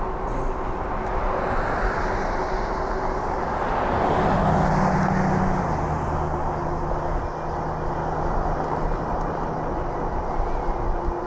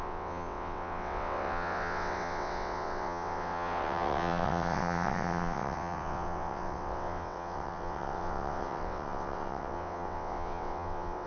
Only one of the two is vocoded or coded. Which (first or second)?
second